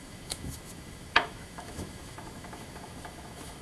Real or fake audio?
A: fake